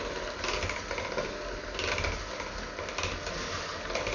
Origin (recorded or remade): recorded